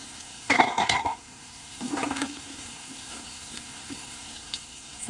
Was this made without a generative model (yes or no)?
no